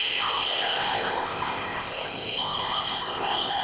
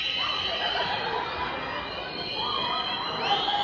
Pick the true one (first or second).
second